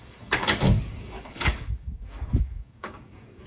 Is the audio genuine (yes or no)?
no